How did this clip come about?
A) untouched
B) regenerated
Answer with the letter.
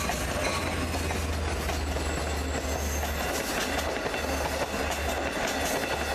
A